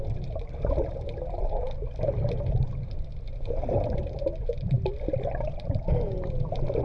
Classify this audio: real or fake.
fake